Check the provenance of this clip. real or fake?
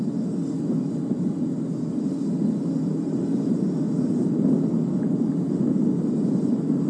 real